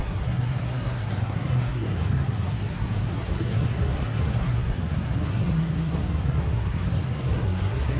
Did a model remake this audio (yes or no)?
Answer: yes